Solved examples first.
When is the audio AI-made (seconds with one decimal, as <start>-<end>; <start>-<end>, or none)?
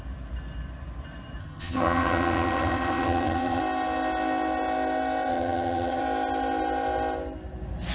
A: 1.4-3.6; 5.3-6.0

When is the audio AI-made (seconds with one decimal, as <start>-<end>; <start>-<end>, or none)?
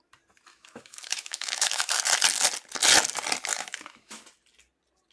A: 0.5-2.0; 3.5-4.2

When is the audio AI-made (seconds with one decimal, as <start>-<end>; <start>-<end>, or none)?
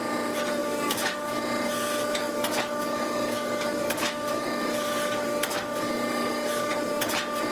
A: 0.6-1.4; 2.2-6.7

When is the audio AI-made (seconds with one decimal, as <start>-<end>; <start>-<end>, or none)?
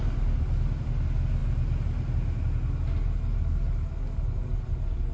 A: none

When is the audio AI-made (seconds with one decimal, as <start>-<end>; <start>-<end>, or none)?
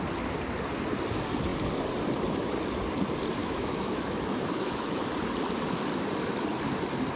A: 3.4-5.0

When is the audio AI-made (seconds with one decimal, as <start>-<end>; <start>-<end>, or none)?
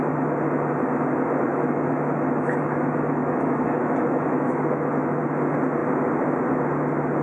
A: 1.5-5.2